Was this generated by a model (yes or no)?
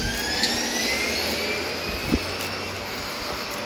no